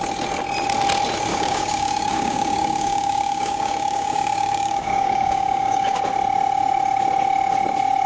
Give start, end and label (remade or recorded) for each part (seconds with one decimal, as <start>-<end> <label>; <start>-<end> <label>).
0.0-1.3 recorded; 1.3-6.0 remade; 6.0-8.1 recorded